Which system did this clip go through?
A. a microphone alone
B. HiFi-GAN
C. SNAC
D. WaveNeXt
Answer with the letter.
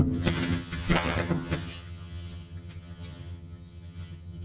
B